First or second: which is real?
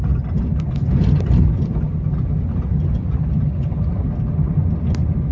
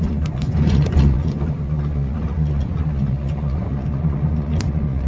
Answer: first